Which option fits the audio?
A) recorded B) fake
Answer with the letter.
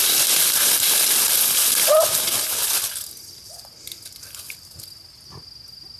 A